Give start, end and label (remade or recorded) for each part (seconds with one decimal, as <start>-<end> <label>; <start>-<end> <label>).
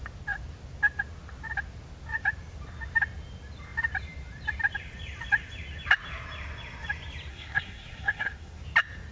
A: 0.0-7.3 recorded; 7.3-8.6 remade; 8.6-9.1 recorded